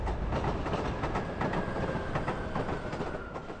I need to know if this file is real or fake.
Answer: real